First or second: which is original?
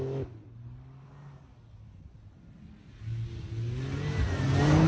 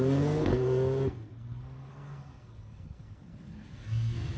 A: first